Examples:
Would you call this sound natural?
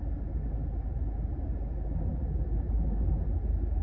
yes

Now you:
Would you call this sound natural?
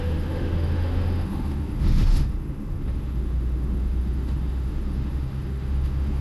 no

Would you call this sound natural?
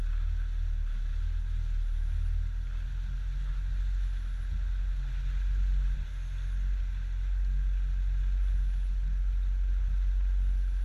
yes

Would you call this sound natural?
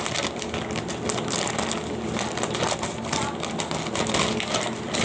yes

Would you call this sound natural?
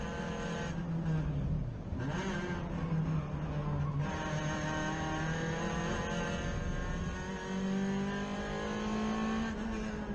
yes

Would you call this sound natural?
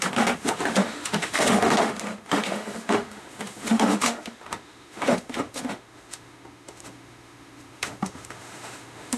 no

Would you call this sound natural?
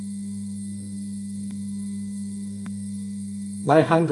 no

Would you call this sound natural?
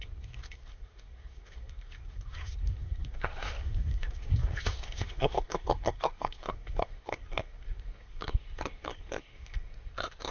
no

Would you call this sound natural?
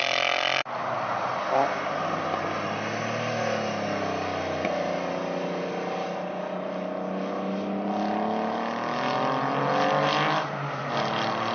yes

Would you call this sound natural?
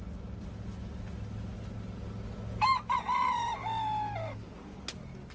yes